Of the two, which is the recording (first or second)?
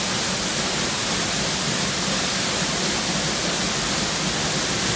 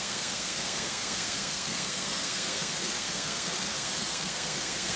first